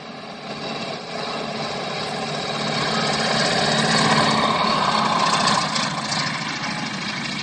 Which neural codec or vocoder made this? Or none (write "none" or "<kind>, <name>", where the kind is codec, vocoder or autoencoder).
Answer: none